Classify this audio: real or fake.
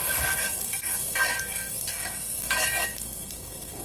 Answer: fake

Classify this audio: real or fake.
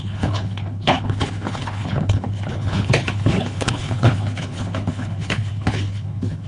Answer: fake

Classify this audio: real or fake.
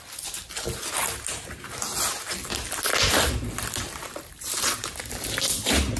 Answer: real